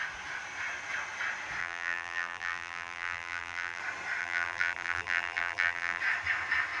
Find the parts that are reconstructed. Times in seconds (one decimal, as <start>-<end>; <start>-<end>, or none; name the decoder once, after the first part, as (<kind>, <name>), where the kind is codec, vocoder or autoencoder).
1.6-3.8 (vocoder, BigVGAN v2); 4.2-6.0